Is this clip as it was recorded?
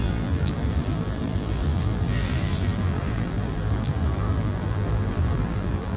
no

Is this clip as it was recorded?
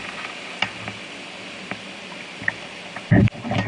yes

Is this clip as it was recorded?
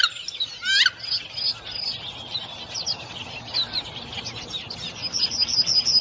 yes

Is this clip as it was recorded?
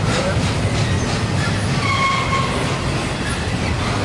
yes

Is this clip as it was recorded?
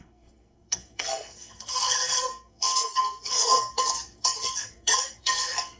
no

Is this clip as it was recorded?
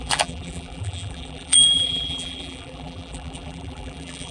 no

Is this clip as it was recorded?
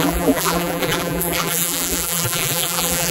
no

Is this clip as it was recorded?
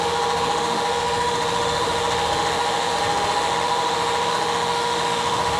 no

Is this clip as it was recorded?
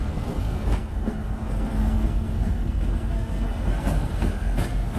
no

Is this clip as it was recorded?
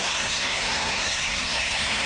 no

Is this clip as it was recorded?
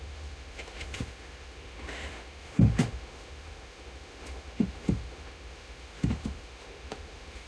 no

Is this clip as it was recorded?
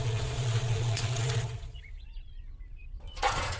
no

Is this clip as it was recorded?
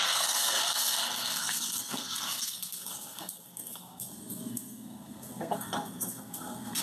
no